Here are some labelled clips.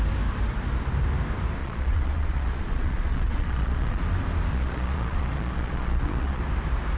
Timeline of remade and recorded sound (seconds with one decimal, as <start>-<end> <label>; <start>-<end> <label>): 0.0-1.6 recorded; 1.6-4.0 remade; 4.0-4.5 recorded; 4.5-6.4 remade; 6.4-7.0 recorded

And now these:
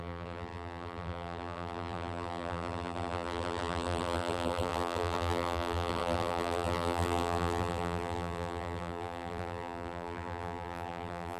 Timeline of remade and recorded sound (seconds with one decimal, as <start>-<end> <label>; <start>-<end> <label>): 0.0-11.4 remade

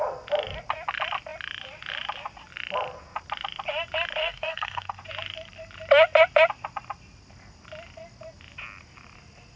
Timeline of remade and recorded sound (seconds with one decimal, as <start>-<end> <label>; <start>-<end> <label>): 0.0-4.2 recorded; 4.2-5.0 remade; 5.0-9.6 recorded